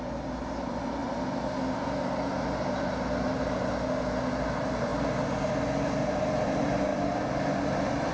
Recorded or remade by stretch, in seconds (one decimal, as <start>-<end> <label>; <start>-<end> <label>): 0.0-8.1 recorded

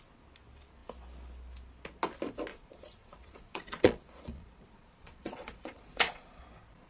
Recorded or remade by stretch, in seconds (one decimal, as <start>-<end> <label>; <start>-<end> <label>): 0.0-2.5 recorded; 2.5-6.4 remade; 6.4-6.9 recorded

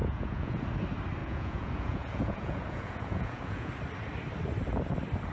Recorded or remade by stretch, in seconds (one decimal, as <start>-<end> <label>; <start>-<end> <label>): 0.0-0.6 remade; 0.6-1.2 recorded; 1.2-3.7 remade; 3.7-5.3 recorded

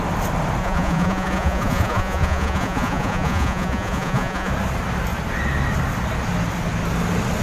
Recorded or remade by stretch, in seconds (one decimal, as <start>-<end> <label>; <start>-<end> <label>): 0.0-0.6 recorded; 0.6-4.5 remade; 4.5-7.4 recorded

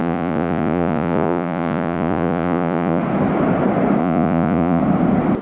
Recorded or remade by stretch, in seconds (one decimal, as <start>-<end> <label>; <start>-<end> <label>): 0.0-3.0 remade; 3.0-4.0 recorded; 4.0-4.8 remade; 4.8-5.4 recorded